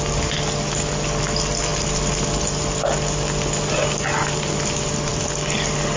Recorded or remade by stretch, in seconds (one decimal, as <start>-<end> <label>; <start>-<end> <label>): 0.0-6.0 recorded